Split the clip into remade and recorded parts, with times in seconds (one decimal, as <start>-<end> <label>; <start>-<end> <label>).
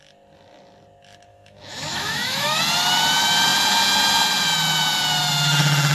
0.0-1.3 recorded; 1.3-2.6 remade; 2.6-5.9 recorded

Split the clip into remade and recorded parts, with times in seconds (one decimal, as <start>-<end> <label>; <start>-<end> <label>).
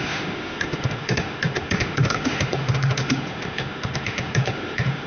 0.0-5.1 remade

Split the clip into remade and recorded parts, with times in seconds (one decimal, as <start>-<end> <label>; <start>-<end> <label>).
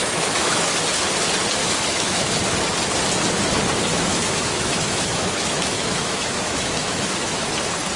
0.0-0.7 remade; 0.7-1.6 recorded; 1.6-2.3 remade; 2.3-3.9 recorded; 3.9-7.5 remade; 7.5-8.0 recorded